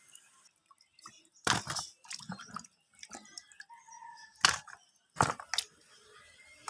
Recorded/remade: recorded